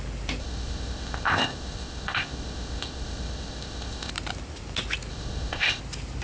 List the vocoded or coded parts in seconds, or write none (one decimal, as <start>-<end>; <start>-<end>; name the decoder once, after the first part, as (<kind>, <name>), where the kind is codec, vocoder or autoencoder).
0.4-4.1 (codec, ZipCodec); 5.1-5.8